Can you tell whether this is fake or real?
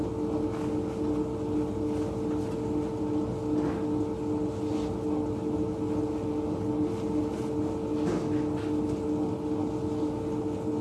real